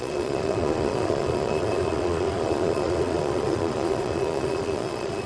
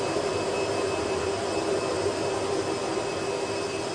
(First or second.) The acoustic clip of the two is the second